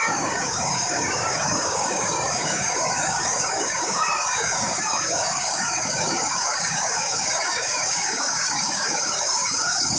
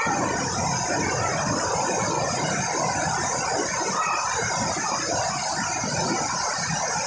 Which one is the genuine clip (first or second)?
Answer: second